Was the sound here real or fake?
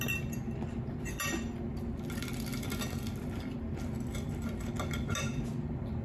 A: real